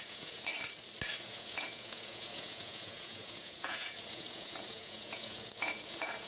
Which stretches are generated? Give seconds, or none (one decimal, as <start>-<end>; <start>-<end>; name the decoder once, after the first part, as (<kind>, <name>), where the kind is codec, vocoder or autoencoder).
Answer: 0.0-0.5 (vocoder, Vocos); 1.2-6.3